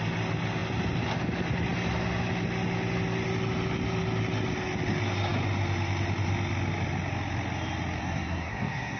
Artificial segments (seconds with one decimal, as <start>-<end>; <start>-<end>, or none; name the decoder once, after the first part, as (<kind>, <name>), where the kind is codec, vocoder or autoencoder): 8.0-9.0 (codec, SNAC)